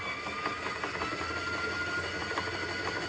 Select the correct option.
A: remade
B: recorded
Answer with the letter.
B